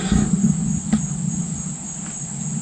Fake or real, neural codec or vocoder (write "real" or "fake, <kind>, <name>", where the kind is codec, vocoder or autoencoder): real